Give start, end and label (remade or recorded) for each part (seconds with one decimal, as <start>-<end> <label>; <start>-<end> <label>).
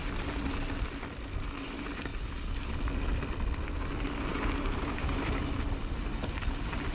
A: 0.0-2.1 recorded; 2.1-2.7 remade; 2.7-4.3 recorded; 4.3-5.4 remade; 5.4-6.9 recorded